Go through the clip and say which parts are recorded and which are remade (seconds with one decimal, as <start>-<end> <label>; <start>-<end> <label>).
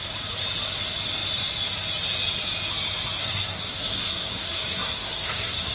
0.0-3.2 recorded; 3.2-5.7 remade